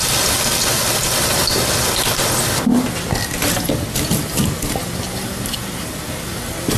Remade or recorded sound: recorded